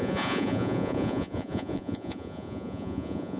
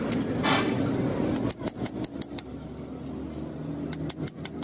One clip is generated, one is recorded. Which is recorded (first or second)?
second